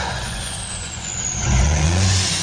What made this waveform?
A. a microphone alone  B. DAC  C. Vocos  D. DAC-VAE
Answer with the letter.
C